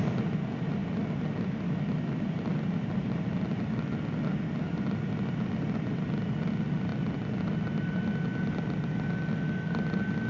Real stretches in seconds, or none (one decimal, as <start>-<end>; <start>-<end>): 0.0-10.3